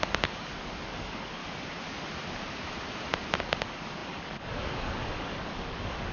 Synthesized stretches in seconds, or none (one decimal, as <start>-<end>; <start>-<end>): 0.0-1.4; 3.4-6.1